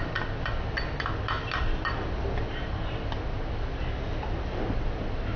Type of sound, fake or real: real